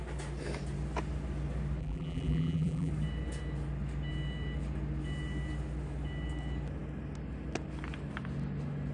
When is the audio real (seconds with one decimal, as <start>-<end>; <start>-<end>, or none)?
0.0-1.8; 2.9-8.9